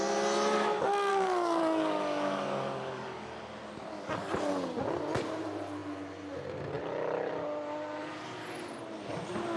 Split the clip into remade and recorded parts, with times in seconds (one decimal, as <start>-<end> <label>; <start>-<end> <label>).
0.0-1.1 recorded; 1.1-3.4 remade; 3.4-9.6 recorded